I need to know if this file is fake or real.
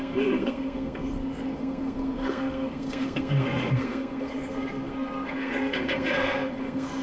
fake